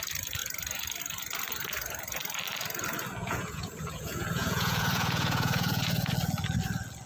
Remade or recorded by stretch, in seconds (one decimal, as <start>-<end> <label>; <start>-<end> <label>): 0.0-3.2 recorded; 3.2-6.1 remade; 6.1-7.1 recorded